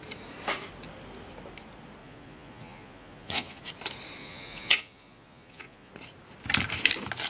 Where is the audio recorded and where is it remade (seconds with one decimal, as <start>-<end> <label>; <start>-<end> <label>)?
0.0-2.0 recorded; 2.0-3.6 remade; 3.6-4.2 recorded; 4.2-5.9 remade; 5.9-7.3 recorded